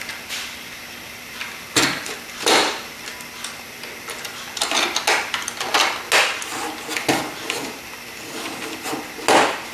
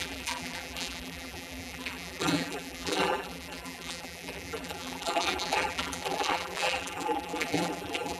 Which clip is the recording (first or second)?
first